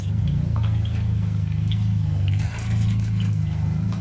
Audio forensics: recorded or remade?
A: remade